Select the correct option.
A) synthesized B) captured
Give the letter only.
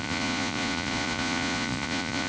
A